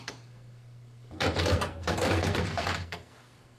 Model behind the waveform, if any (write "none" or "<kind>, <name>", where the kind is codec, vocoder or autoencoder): codec, SNAC